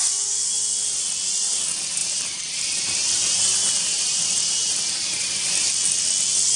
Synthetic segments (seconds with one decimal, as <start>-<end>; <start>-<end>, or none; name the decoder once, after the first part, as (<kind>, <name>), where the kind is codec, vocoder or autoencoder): 2.0-5.7 (vocoder, BigVGAN v2)